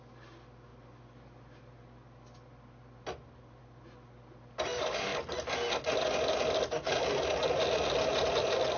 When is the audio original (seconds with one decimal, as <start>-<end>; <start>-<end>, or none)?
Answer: 0.0-8.8

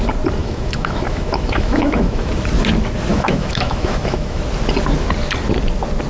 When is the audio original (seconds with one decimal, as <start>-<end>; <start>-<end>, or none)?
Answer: 0.0-0.4; 2.3-3.1; 4.4-6.1